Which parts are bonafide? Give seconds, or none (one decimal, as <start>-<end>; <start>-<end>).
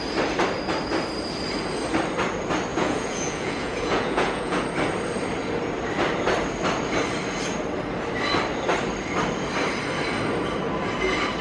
0.0-2.7; 4.6-11.4